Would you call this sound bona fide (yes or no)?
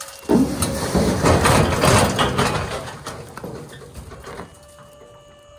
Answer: yes